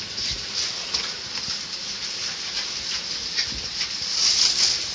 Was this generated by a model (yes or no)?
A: no